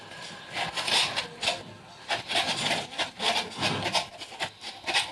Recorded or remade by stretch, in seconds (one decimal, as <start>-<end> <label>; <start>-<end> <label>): 0.0-5.1 recorded